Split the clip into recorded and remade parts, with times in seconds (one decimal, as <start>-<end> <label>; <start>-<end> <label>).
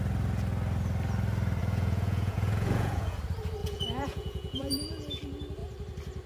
0.0-1.6 recorded; 1.6-3.2 remade; 3.2-3.6 recorded; 3.6-5.1 remade; 5.1-6.3 recorded